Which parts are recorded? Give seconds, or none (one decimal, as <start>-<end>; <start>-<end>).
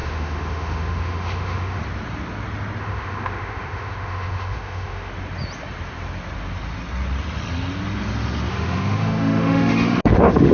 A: 1.8-2.8; 5.1-8.5